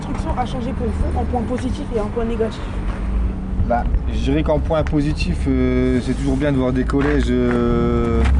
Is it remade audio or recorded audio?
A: recorded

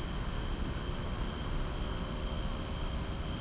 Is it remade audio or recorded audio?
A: recorded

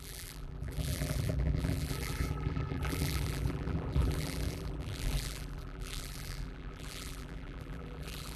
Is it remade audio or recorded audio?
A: remade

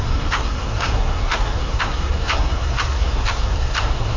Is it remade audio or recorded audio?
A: remade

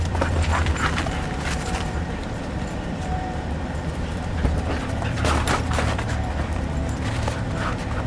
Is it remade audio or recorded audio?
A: remade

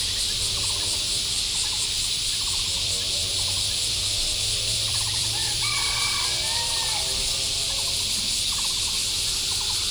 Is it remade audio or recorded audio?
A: remade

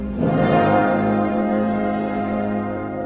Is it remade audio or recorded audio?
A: remade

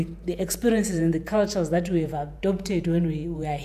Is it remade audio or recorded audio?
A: remade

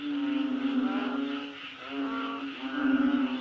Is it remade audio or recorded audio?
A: recorded